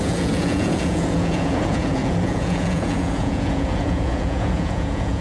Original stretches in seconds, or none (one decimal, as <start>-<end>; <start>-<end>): none